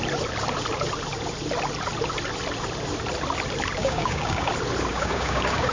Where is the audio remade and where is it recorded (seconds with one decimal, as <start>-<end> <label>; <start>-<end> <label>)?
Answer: 0.0-3.8 recorded; 3.8-4.5 remade; 4.5-4.9 recorded; 4.9-5.7 remade